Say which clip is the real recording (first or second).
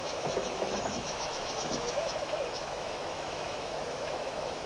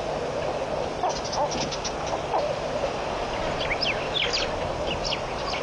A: second